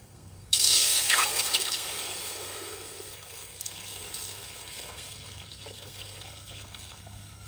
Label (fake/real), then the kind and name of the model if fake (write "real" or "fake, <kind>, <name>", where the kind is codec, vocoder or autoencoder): fake, codec, SNAC